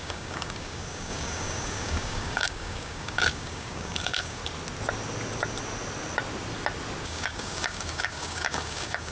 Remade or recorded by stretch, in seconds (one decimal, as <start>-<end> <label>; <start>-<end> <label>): 0.0-4.4 remade; 4.4-7.0 recorded; 7.0-9.1 remade